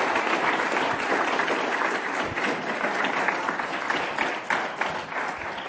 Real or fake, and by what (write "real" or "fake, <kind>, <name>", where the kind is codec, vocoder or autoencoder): fake, vocoder, BigVGAN v2